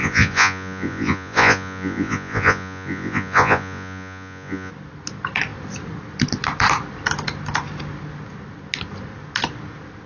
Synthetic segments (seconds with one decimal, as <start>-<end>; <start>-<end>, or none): 0.0-4.7